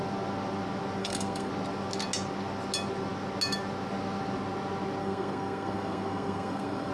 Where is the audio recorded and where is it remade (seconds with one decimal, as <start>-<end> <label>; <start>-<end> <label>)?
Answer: 0.0-1.0 recorded; 1.0-1.5 remade; 1.5-5.0 recorded; 5.0-6.9 remade